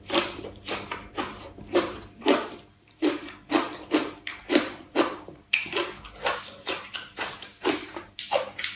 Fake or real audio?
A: fake